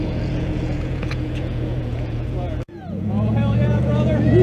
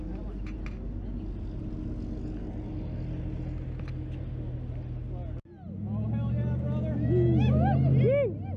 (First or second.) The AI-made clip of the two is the first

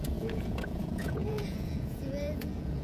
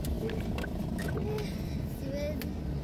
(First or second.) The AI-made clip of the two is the first